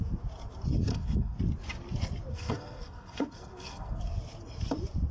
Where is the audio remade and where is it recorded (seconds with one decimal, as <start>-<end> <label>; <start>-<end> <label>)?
0.0-0.9 recorded; 0.9-1.4 remade; 1.4-2.3 recorded; 2.3-4.0 remade; 4.0-5.1 recorded